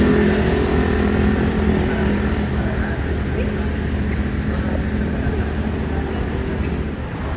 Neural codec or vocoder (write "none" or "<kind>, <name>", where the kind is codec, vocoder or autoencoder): none